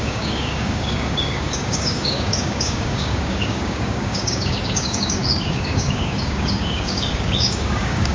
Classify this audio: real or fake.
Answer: fake